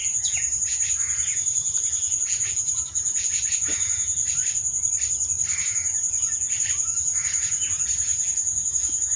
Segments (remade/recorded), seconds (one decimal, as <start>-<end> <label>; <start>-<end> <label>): 0.0-4.2 remade; 4.2-5.6 recorded; 5.6-9.2 remade